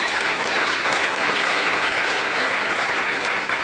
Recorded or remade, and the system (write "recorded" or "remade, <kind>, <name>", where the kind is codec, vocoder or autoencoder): remade, codec, SNAC